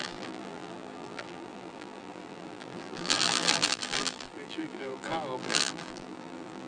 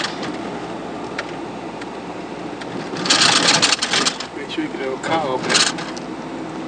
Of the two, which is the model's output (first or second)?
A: first